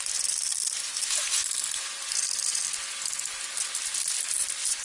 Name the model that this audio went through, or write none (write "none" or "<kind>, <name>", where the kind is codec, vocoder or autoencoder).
vocoder, BigVGAN v2